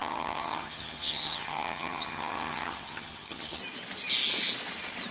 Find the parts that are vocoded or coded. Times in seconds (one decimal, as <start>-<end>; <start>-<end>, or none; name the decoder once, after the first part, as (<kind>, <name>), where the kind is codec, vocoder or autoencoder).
0.0-3.6 (vocoder, HiFi-GAN)